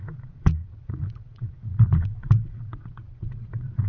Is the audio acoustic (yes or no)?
no